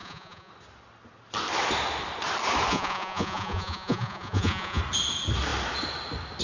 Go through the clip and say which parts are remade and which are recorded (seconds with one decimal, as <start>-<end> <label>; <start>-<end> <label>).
0.0-0.5 remade; 0.5-2.7 recorded; 2.7-4.8 remade; 4.8-6.4 recorded